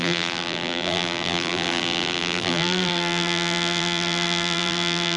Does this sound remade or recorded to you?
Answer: remade